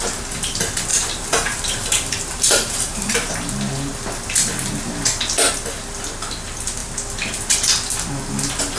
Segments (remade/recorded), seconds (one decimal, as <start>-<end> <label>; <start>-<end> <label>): 0.0-0.9 recorded; 0.9-3.3 remade; 3.3-8.8 recorded